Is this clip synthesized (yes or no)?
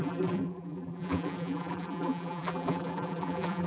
yes